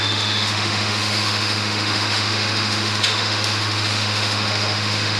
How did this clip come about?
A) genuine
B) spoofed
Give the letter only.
B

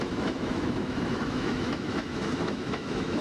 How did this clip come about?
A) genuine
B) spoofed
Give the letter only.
B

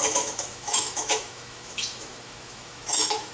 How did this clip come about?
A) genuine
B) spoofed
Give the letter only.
B